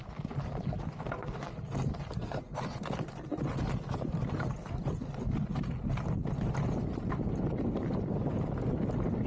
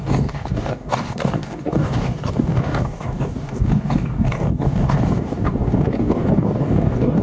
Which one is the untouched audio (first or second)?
first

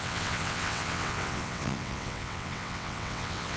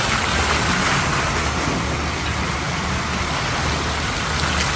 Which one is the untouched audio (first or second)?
second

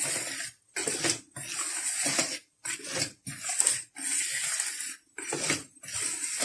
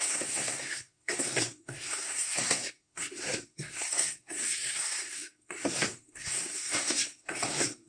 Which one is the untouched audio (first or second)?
first